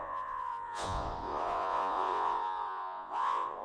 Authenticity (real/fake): fake